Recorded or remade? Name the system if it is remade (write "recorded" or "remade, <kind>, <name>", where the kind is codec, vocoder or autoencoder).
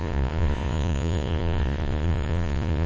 remade, vocoder, Vocos